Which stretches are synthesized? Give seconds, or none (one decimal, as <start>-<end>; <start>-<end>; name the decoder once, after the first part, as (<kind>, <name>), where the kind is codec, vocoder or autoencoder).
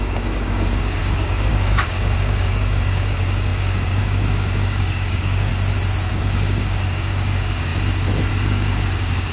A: 0.0-5.5 (codec, DAC); 6.1-7.7; 8.3-9.3